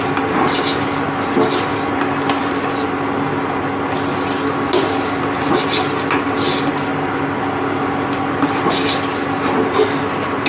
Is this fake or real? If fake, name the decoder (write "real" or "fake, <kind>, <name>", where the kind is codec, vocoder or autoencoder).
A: real